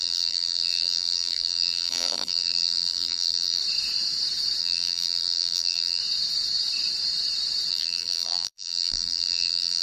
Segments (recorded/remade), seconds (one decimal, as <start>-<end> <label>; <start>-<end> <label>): 0.0-3.6 remade; 3.6-4.6 recorded; 4.6-6.0 remade; 6.0-7.7 recorded; 7.7-9.8 remade